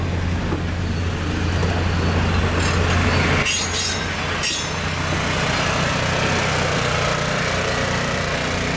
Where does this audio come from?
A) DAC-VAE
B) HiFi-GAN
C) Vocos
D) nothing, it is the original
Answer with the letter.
D